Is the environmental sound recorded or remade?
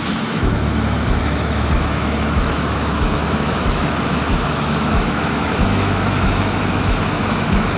remade